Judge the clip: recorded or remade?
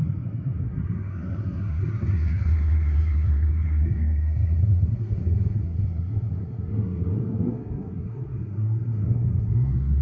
remade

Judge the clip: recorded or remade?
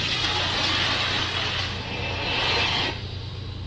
recorded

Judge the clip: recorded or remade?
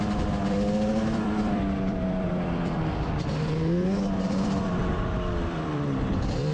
remade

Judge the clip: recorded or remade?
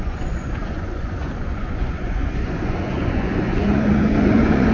remade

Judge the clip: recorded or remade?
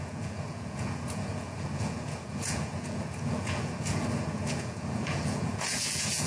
remade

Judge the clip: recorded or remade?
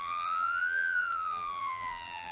remade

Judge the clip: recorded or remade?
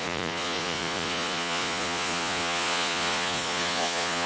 remade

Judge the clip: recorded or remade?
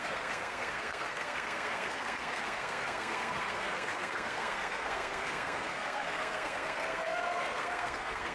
remade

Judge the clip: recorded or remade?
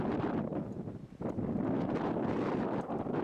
recorded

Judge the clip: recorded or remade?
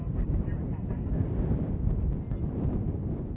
recorded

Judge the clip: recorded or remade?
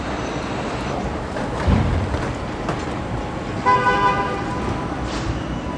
recorded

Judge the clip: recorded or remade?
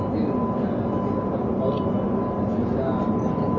recorded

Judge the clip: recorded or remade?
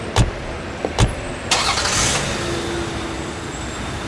recorded